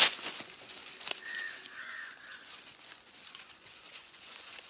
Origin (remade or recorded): remade